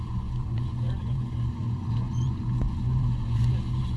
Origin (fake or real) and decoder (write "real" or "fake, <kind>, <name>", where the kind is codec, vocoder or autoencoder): fake, vocoder, Vocos